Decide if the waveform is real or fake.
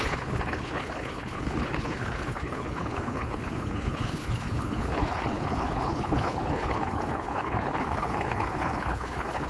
fake